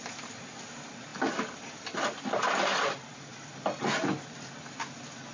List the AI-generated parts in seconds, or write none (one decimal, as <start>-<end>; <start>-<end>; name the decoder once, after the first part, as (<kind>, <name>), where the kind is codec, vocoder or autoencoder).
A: none